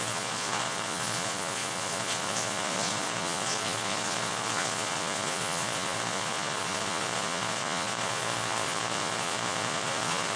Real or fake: fake